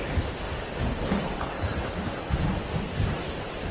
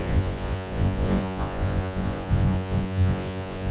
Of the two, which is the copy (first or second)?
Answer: second